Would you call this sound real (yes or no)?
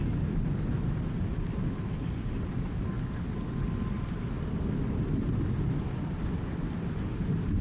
yes